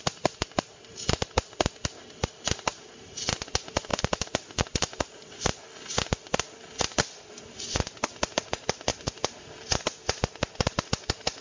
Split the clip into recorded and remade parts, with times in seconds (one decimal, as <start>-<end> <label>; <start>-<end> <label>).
0.0-0.9 remade; 0.9-8.9 recorded; 8.9-11.4 remade